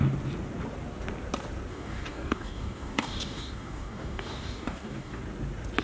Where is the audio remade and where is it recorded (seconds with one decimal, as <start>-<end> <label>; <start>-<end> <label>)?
0.0-1.7 recorded; 1.7-5.2 remade; 5.2-5.8 recorded